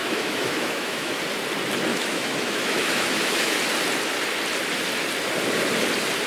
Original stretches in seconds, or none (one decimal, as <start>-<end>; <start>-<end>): 1.1-1.9; 3.6-6.3